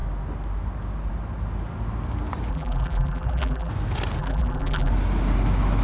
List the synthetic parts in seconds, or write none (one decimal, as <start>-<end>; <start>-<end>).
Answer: 2.5-3.7; 4.2-4.9